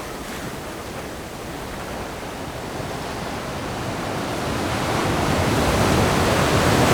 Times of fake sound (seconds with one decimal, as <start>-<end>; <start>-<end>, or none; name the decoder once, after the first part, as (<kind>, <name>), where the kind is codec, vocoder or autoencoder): none